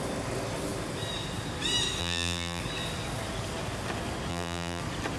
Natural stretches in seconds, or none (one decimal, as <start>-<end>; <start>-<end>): 0.0-2.0; 2.6-4.3; 4.8-5.2